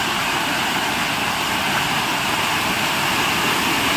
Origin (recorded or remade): recorded